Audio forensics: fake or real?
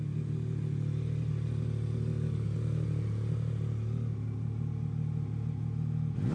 real